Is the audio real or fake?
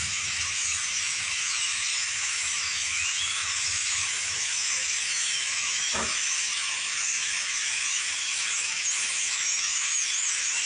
fake